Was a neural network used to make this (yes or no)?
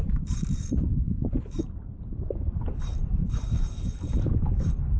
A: yes